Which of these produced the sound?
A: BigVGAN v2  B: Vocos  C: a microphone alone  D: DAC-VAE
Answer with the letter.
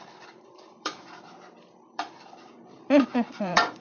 A